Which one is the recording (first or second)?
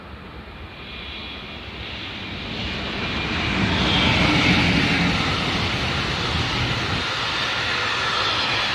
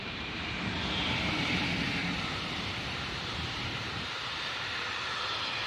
first